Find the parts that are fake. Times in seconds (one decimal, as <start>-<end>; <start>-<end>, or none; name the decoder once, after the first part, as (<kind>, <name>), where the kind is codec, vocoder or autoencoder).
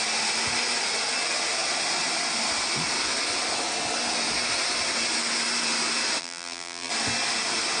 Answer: 6.2-6.9 (vocoder, BigVGAN v2)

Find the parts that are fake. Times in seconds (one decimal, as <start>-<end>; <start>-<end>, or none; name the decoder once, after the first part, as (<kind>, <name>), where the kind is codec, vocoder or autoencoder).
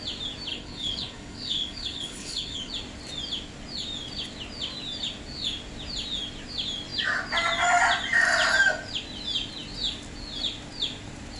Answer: 0.5-2.7 (codec, HILCodec)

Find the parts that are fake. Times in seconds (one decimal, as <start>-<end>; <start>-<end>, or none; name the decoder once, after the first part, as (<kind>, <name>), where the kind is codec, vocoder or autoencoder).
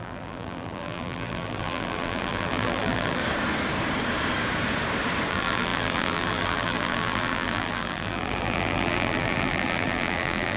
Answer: 0.0-3.2 (vocoder, BigVGAN v2); 5.3-10.6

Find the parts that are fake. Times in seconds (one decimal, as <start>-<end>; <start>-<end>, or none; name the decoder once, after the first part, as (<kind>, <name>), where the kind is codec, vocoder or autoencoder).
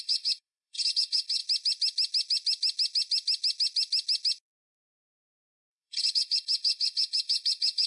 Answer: 0.0-1.4 (codec, HILCodec); 5.7-7.9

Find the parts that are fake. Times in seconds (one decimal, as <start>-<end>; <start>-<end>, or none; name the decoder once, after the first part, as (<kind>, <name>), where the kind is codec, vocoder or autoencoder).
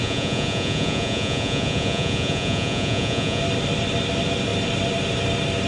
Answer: 0.0-3.4 (vocoder, Vocos)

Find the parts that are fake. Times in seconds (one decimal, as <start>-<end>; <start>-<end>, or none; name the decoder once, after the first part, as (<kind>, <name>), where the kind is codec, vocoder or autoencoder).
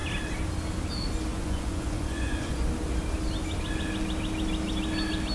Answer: 1.3-2.7 (vocoder, Vocos)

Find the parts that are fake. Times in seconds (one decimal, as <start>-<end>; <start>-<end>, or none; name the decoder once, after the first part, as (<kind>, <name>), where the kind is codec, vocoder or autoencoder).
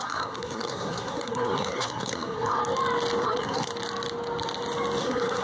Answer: 0.0-2.6 (codec, SNAC); 3.2-3.7; 5.0-5.4